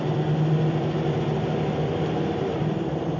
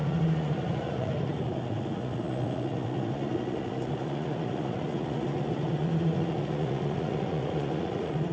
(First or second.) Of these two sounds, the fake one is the second